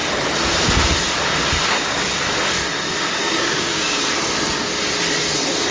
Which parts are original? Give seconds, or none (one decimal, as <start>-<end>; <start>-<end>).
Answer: 0.0-3.2; 4.0-5.7